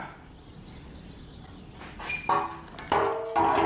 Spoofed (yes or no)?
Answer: no